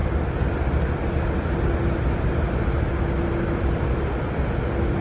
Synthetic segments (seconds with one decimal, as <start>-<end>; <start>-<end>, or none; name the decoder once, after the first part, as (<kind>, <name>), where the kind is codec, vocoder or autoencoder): none